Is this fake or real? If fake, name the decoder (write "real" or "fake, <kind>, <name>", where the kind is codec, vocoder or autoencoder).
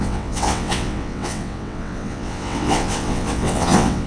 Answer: fake, vocoder, WaveNeXt